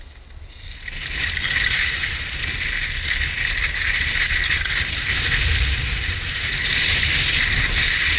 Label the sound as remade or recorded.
recorded